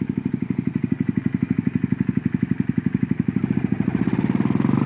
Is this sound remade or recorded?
recorded